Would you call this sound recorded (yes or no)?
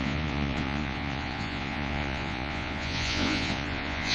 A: no